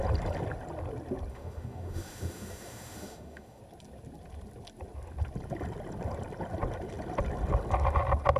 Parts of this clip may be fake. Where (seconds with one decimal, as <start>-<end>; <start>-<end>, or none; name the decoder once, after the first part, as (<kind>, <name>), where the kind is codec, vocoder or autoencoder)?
1.3-3.6 (autoencoder, DAC-VAE)

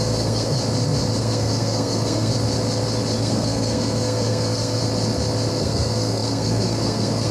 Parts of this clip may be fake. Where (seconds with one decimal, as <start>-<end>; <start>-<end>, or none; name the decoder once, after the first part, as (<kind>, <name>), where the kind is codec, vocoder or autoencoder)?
0.0-0.6 (codec, SNAC); 1.1-2.3; 3.2-4.8; 5.5-7.3

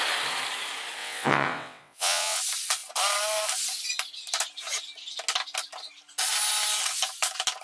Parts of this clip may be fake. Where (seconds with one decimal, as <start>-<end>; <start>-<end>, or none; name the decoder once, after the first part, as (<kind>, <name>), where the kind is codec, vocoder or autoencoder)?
1.0-2.4 (vocoder, WaveNeXt)